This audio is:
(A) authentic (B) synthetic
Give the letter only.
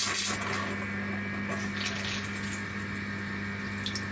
A